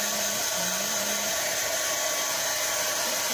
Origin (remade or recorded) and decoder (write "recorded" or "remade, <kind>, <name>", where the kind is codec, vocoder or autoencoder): remade, vocoder, BigVGAN v2